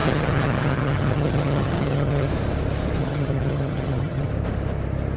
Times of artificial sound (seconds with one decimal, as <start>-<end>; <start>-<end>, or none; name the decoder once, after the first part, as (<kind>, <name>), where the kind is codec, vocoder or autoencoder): 0.0-2.3 (vocoder, HiFi-GAN); 3.0-4.3